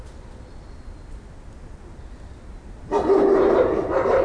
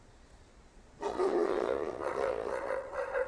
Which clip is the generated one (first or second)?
second